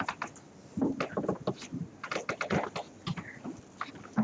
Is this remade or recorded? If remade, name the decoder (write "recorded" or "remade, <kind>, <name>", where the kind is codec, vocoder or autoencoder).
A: recorded